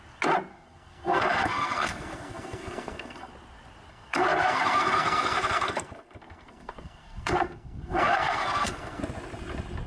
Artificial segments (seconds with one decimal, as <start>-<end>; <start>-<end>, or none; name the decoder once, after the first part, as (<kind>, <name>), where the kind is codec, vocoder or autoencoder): 0.5-3.3 (codec, SNAC); 3.9-9.0

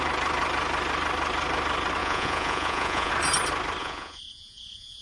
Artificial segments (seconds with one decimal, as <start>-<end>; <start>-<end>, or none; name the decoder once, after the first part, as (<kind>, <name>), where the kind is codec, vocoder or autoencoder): 2.0-3.1 (vocoder, Vocos); 3.8-5.0

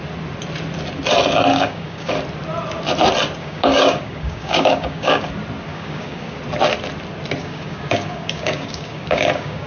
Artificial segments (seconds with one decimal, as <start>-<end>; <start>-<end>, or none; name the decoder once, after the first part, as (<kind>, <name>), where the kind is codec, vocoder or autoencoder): 1.5-2.1 (codec, DAC); 3.4-5.3; 5.7-6.4; 7.4-9.7

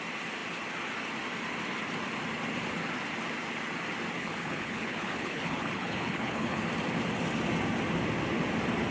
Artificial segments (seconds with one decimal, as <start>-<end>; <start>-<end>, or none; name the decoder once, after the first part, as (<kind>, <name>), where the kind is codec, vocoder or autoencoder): 4.2-6.6 (codec, HILCodec)

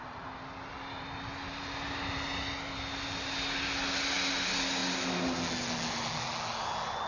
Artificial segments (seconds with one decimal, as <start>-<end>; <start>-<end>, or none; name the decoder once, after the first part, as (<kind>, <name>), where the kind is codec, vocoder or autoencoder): none

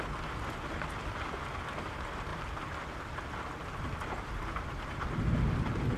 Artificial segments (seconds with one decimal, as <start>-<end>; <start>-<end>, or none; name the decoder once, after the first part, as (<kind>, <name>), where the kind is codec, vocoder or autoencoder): none

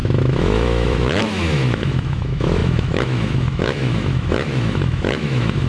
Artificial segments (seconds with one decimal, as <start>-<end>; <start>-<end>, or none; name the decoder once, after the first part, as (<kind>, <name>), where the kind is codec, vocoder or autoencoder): 0.0-5.7 (autoencoder, DAC-VAE)